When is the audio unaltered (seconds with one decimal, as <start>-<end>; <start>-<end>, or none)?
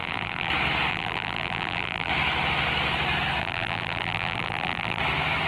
0.5-0.9; 2.1-3.4; 5.0-5.5